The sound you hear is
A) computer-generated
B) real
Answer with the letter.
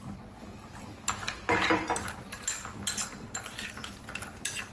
B